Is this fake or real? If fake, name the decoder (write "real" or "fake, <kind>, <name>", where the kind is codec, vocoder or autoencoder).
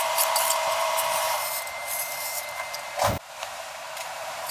fake, vocoder, BigVGAN v2